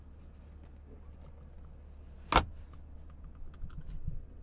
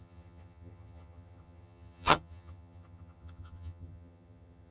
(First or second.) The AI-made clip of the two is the second